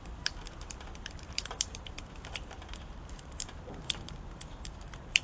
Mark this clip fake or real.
fake